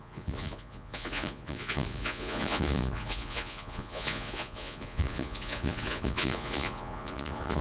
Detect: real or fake fake